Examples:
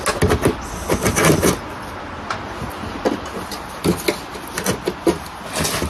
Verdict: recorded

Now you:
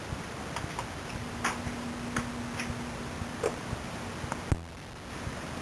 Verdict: recorded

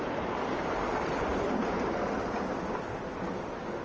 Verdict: recorded